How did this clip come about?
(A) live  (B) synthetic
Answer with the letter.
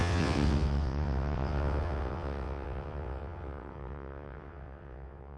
B